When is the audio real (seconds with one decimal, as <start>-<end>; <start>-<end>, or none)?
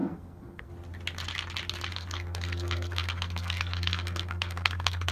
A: 0.7-1.9